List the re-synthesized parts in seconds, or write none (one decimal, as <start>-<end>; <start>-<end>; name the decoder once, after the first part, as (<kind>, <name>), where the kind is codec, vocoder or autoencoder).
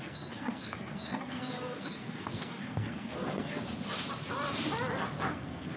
0.0-3.5 (codec, SNAC); 5.3-5.8